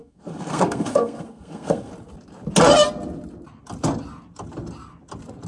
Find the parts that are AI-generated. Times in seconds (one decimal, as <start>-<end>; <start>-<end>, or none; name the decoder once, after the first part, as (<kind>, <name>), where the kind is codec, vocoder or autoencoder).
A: 0.0-1.9 (codec, SNAC)